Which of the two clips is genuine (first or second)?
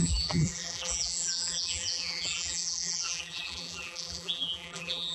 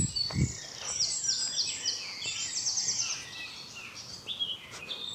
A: second